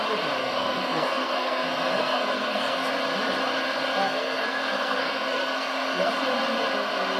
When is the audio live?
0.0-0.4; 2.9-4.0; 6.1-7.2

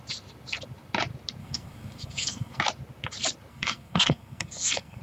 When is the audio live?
0.0-1.4; 2.6-3.5

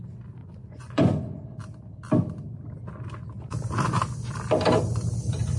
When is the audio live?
0.0-0.4; 1.2-5.6

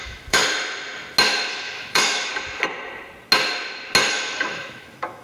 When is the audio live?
0.4-1.5; 2.3-4.1